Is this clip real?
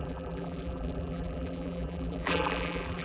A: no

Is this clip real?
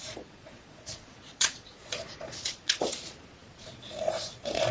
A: no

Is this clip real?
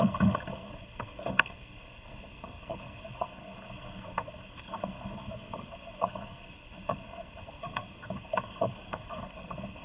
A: no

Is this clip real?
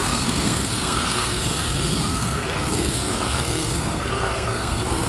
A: no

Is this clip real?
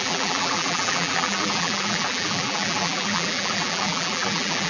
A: no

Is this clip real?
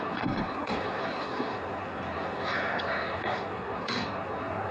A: no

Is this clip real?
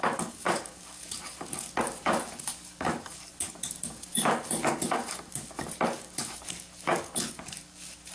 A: no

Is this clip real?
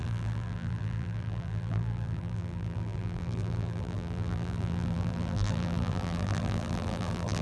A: no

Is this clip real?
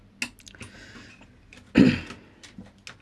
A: yes